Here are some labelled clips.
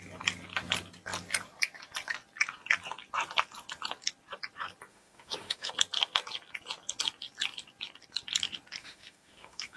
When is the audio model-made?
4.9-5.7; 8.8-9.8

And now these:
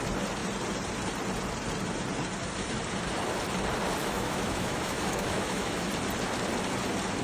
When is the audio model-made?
4.0-5.9

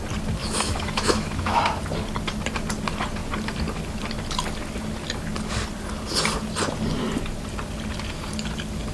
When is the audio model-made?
0.4-1.6

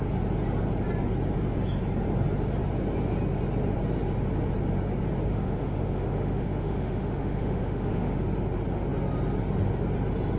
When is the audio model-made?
5.3-8.2

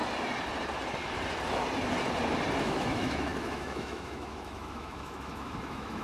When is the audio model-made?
2.6-6.0

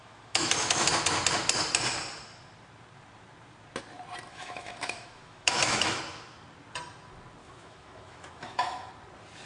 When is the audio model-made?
0.0-0.9; 4.3-6.0; 7.4-8.9

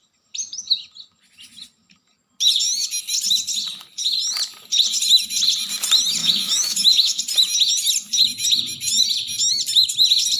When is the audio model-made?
6.2-7.2